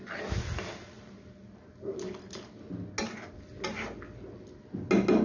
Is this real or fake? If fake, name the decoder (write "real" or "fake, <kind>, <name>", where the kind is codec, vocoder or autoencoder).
real